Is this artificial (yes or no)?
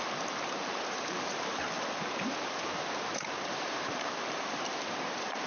yes